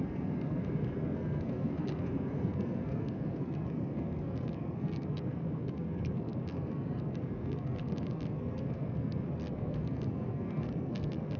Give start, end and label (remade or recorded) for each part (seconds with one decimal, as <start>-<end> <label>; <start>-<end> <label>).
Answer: 0.0-11.4 remade